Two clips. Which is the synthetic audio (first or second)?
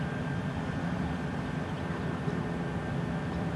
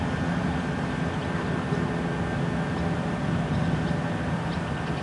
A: first